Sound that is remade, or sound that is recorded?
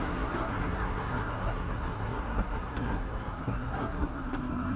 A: remade